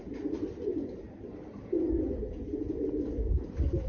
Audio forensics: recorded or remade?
recorded